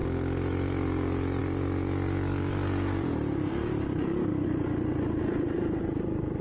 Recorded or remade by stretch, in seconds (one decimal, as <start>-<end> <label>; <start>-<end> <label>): 0.0-6.4 recorded